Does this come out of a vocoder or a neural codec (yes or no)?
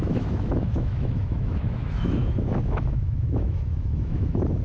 yes